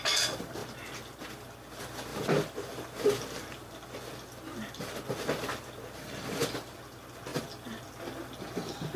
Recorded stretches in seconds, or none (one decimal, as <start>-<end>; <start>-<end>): 0.0-0.6; 1.2-2.1; 4.7-7.3; 7.8-9.0